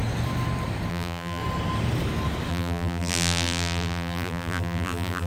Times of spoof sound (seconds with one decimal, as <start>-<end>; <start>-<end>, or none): 0.9-1.4; 2.5-5.3